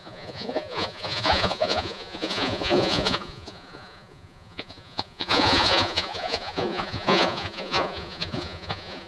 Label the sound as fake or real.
fake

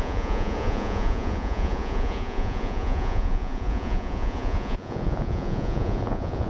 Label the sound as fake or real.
fake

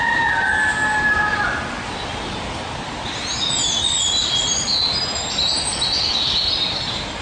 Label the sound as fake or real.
real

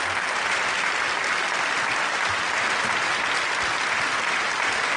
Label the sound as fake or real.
real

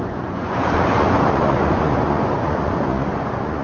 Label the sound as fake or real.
fake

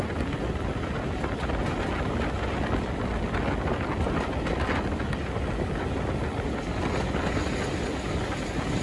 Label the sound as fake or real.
real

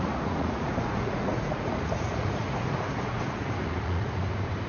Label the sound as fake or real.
fake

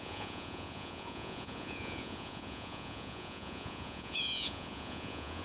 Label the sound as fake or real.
fake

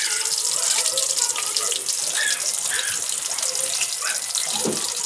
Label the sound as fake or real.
real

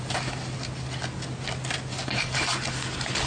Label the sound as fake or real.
real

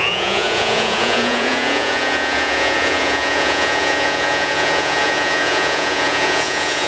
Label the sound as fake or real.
fake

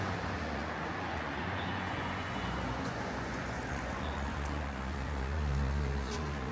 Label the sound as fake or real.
fake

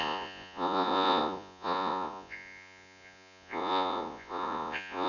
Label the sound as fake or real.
fake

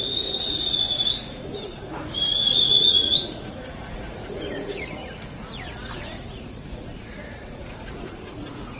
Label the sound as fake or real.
fake